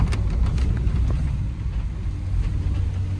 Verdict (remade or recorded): recorded